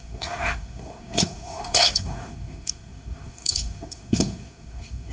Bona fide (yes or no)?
no